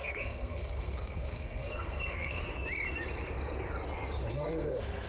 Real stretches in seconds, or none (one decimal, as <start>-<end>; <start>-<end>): 2.4-4.3